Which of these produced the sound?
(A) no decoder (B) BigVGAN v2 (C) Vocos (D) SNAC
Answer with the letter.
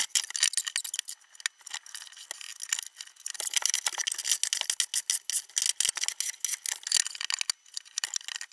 A